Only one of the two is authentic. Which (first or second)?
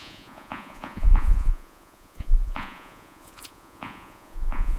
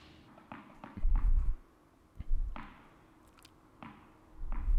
second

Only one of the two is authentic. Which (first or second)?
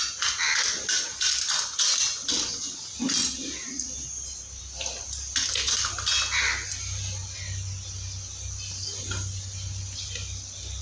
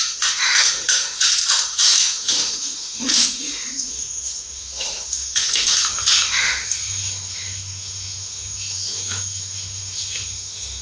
first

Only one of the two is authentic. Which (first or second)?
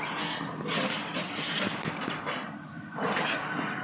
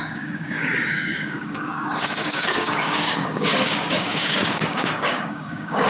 first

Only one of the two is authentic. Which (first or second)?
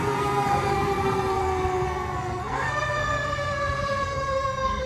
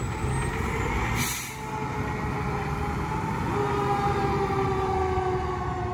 second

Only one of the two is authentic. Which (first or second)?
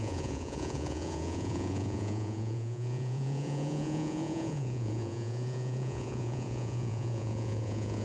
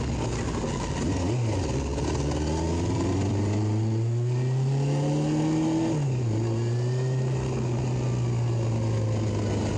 second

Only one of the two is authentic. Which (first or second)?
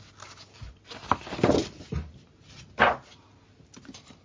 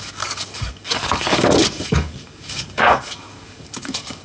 first